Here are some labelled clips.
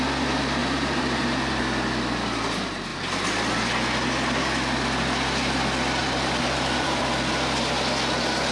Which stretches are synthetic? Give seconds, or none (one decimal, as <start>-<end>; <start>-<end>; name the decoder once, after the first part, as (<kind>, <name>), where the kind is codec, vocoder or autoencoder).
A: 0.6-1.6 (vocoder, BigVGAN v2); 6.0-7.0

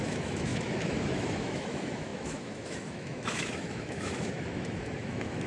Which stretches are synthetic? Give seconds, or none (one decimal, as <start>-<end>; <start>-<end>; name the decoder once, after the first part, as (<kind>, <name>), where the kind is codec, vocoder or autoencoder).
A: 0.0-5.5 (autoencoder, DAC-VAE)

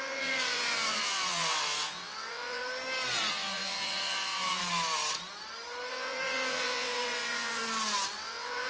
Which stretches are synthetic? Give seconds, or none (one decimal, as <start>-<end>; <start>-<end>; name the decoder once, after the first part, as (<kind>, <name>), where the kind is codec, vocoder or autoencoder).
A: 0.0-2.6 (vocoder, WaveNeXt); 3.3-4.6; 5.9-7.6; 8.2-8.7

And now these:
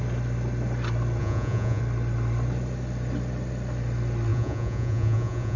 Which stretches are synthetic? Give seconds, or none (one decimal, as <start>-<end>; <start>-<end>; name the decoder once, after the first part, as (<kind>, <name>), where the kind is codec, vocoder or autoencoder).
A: 1.2-1.8 (vocoder, Vocos); 4.3-5.6

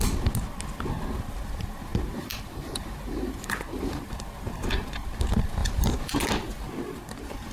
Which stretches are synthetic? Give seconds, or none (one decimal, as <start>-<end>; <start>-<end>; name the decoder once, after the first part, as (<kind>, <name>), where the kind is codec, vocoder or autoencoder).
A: 1.9-4.1 (vocoder, BigVGAN v2); 5.6-6.3

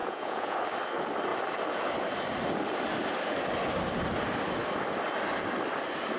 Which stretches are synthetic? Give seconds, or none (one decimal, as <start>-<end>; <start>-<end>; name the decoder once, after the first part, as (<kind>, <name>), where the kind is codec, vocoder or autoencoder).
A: 0.0-0.6 (vocoder, Vocos)

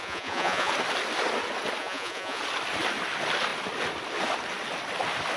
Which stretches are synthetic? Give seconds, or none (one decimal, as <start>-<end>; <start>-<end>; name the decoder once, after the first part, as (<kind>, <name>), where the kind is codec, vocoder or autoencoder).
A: 0.0-0.7 (vocoder, Vocos); 1.8-2.4